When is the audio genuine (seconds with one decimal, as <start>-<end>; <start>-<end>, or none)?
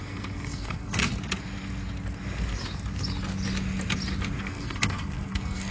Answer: 1.0-4.4